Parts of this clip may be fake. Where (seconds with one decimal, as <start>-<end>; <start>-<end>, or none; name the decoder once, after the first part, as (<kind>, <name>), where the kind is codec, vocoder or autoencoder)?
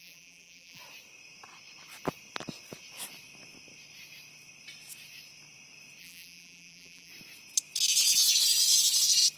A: 0.0-0.8 (vocoder, BigVGAN v2); 6.0-7.1